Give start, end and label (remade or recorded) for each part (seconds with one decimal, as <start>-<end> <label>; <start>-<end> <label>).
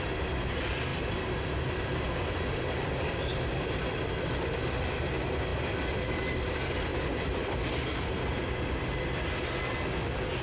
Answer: 0.0-0.9 recorded; 0.9-2.3 remade; 2.3-5.5 recorded; 5.5-6.5 remade; 6.5-6.9 recorded; 6.9-7.7 remade; 7.7-10.4 recorded